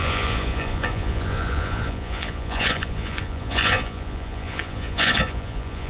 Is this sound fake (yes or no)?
yes